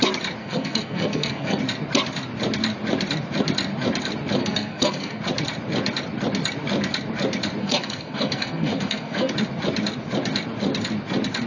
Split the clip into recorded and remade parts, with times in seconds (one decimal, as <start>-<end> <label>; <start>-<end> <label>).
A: 0.0-0.4 recorded; 0.4-1.6 remade; 1.6-4.4 recorded; 4.4-5.2 remade; 5.2-7.6 recorded; 7.6-9.3 remade; 9.3-11.5 recorded

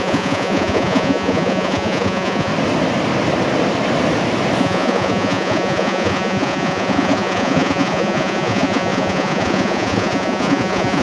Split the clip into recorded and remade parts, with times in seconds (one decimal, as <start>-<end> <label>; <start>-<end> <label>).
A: 0.0-2.5 remade; 2.5-4.6 recorded; 4.6-11.0 remade

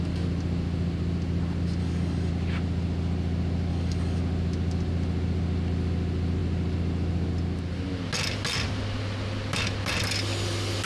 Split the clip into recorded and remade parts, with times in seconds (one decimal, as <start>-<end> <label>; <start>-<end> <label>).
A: 0.0-1.8 recorded; 1.8-2.3 remade; 2.3-3.7 recorded; 3.7-4.2 remade; 4.2-10.9 recorded

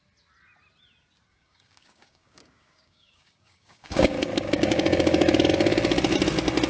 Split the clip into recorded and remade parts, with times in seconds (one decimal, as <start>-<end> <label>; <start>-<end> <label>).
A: 0.0-1.3 recorded; 1.3-5.3 remade; 5.3-6.7 recorded

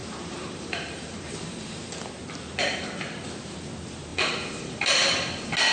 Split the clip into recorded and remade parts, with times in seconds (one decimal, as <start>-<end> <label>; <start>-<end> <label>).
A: 0.0-1.8 remade; 1.8-4.1 recorded; 4.1-5.0 remade; 5.0-5.7 recorded

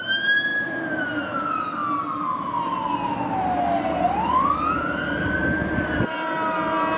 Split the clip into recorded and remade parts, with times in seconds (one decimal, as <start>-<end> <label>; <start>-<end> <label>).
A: 0.0-7.0 recorded

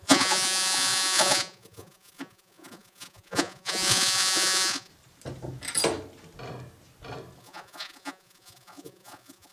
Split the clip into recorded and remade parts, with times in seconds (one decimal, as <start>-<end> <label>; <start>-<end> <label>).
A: 0.0-4.9 remade; 4.9-7.4 recorded; 7.4-9.5 remade